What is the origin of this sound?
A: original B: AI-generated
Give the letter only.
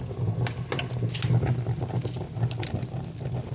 A